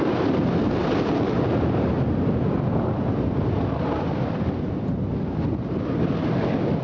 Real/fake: real